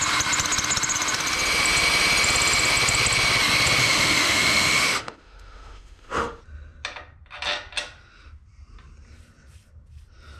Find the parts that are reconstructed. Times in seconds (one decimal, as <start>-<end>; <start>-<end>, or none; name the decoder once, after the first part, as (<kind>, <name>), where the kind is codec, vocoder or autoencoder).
3.8-6.4 (autoencoder, DAC-VAE)